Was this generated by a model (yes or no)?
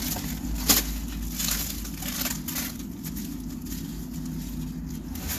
no